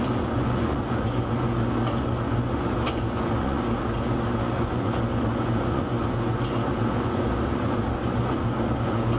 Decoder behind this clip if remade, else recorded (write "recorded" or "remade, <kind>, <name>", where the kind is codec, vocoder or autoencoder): remade, vocoder, Vocos